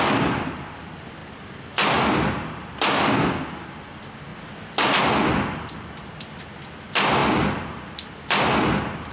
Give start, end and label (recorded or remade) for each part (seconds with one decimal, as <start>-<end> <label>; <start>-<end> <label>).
0.0-4.3 recorded; 4.3-5.0 remade; 5.0-9.1 recorded